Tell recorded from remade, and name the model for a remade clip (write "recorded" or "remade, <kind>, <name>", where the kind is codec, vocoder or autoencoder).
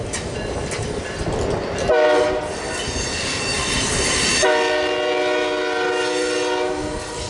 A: recorded